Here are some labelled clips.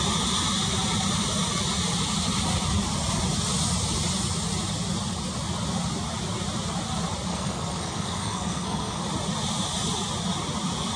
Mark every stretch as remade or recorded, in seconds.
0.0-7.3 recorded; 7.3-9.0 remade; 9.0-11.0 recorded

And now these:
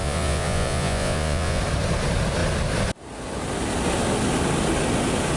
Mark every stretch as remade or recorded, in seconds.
0.0-1.6 remade; 1.6-5.4 recorded

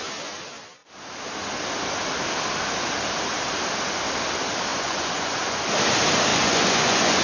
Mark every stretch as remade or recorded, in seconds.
0.0-4.7 recorded; 4.7-5.6 remade; 5.6-6.3 recorded; 6.3-7.2 remade

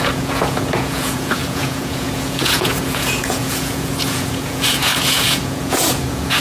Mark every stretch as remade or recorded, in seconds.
0.0-6.4 remade

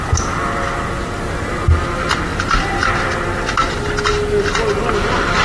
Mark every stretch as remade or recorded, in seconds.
0.0-5.4 recorded